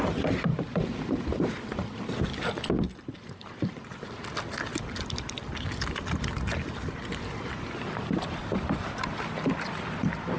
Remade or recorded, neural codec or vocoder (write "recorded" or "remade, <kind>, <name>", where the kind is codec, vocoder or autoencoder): recorded